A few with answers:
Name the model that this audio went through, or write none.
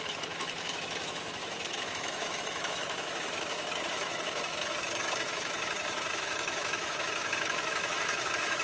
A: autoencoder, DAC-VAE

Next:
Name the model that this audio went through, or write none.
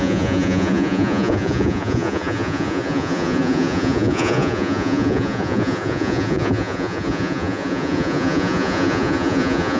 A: vocoder, Vocos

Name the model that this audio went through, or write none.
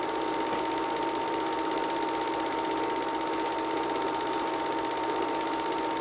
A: none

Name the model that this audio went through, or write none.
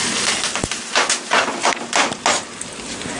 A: none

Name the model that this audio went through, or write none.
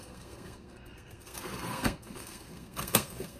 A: codec, SNAC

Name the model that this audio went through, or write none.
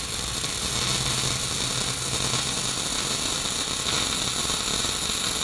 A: none